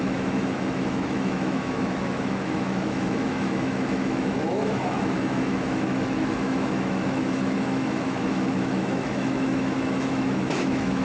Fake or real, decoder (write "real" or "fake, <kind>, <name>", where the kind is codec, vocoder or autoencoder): fake, autoencoder, DAC-VAE